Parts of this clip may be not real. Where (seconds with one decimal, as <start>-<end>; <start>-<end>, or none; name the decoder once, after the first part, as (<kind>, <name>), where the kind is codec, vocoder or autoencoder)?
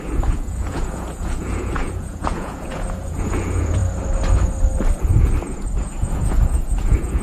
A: 0.0-3.8 (vocoder, Vocos); 4.9-7.2